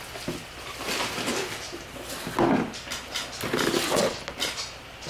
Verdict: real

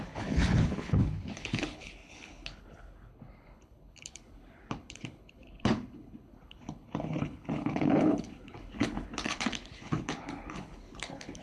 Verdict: fake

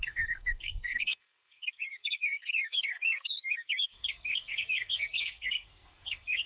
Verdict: fake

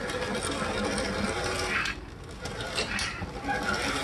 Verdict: real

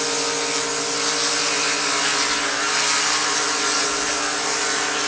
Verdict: real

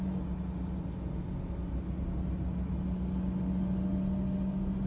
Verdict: real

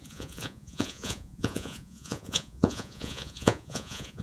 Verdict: fake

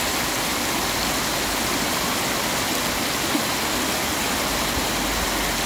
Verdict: real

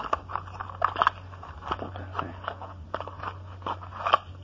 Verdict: real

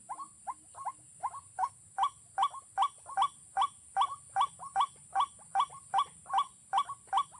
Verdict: real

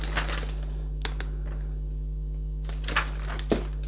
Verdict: real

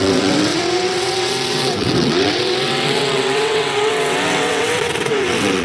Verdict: fake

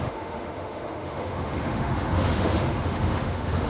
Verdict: fake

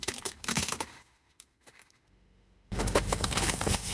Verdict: fake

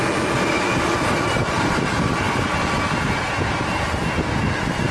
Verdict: real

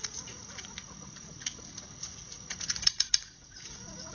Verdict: fake